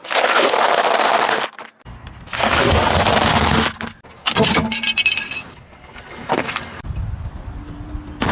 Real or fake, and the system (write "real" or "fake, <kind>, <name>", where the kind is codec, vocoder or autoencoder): real